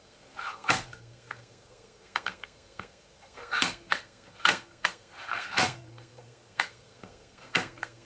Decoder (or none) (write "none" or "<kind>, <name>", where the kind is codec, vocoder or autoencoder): codec, SNAC